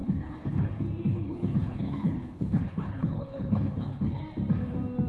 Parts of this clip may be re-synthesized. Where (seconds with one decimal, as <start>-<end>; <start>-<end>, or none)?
0.0-0.7; 1.1-4.2